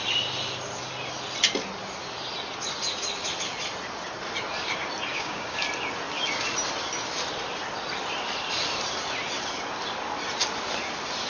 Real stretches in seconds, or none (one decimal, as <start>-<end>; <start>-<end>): 0.0-5.1; 5.6-11.3